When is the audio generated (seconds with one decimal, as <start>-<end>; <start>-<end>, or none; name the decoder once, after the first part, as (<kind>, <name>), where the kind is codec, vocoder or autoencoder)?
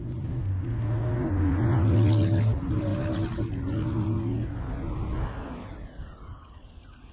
none